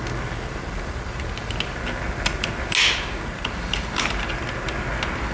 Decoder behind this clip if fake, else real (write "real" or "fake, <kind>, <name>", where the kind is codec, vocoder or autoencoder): real